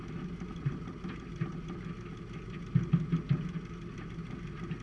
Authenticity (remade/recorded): recorded